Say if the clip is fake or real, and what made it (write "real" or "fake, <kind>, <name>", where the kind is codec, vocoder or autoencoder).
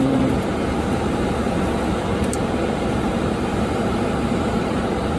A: fake, vocoder, BigVGAN v2